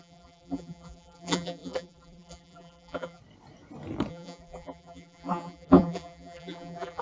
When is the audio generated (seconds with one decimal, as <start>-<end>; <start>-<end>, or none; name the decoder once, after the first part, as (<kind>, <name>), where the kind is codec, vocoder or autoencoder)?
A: 0.0-3.2 (vocoder, BigVGAN v2); 4.1-7.0